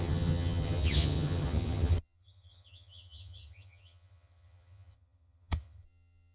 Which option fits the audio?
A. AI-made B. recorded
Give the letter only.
A